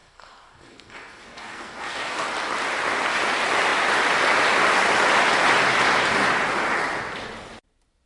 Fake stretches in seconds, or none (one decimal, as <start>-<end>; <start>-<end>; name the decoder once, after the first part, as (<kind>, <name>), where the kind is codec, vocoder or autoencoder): 0.0-2.3 (codec, SNAC)